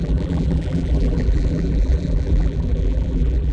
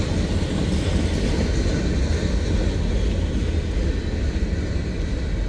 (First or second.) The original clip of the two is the second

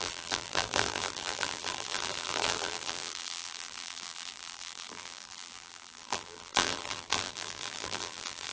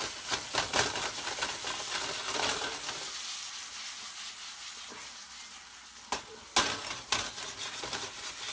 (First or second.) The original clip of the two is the second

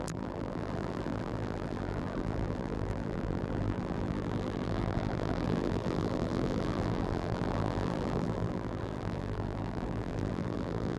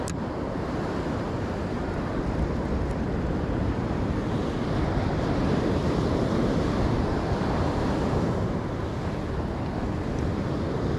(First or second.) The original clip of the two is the second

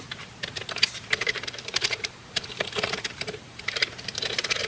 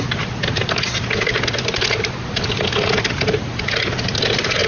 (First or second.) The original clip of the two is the second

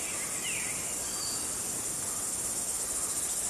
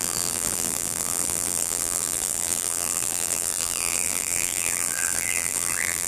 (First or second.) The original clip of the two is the first